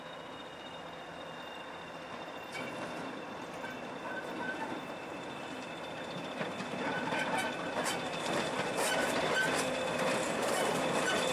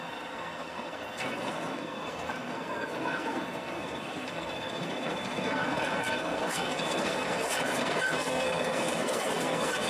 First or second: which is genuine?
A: first